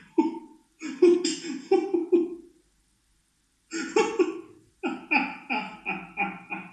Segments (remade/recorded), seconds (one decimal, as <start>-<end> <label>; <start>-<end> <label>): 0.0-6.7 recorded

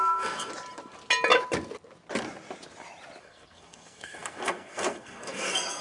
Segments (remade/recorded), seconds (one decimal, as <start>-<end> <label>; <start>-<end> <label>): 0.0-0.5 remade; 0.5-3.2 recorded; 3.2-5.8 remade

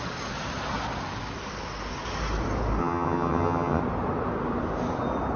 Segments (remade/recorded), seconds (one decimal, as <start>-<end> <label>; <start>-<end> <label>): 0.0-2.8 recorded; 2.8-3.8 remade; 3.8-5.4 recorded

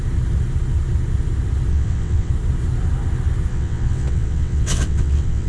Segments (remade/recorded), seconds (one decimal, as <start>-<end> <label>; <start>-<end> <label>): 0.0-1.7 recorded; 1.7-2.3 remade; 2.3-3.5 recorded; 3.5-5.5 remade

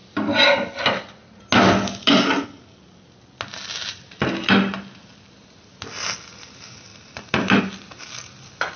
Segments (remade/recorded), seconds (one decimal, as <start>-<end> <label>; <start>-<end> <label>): 0.0-8.8 recorded